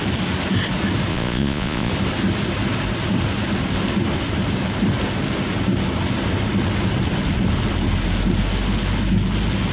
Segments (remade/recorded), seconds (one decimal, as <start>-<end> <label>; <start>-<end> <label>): 0.0-1.1 recorded; 1.1-1.9 remade; 1.9-9.7 recorded